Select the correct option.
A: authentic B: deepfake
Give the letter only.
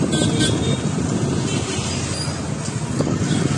A